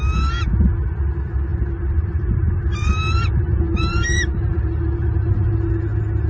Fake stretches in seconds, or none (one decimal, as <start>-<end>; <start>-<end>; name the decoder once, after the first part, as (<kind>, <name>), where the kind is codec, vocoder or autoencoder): 1.5-5.3 (vocoder, BigVGAN v2)